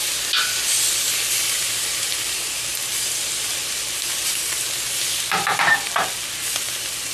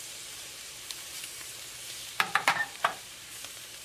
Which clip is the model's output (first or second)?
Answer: second